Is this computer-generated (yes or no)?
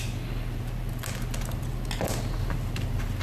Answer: no